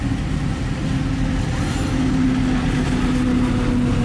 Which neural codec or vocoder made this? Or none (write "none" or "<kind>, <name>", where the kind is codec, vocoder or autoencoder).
none